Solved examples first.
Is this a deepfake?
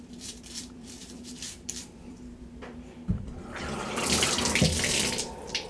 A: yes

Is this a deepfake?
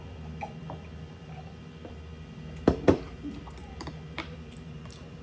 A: yes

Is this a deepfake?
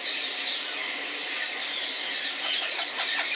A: yes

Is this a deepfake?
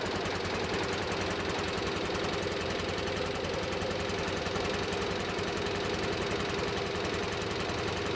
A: no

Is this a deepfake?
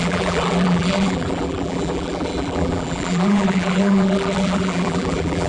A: yes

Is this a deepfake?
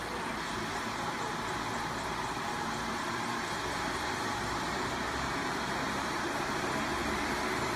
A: yes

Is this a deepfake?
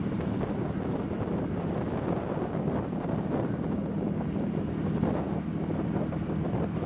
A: no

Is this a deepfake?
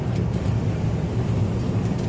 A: yes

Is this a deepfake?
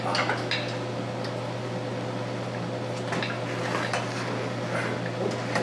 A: no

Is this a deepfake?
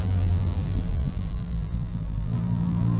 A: yes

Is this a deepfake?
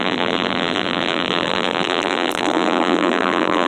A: yes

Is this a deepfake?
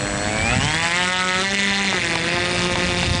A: no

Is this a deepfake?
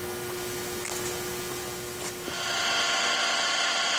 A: no